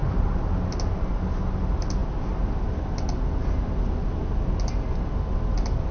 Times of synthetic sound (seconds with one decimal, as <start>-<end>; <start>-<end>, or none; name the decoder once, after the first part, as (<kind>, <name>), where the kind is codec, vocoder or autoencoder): 0.0-0.5 (vocoder, BigVGAN v2)